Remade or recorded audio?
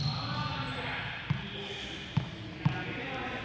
recorded